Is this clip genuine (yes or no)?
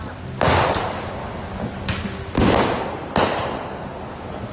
yes